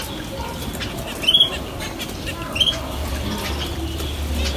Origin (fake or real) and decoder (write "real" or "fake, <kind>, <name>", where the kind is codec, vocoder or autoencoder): real